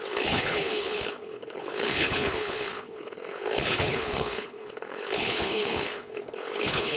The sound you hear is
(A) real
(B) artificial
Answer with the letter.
B